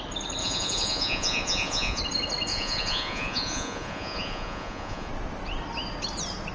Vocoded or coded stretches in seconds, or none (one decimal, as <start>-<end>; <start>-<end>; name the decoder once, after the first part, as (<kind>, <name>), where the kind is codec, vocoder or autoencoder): 0.4-2.0 (vocoder, Vocos); 2.5-5.1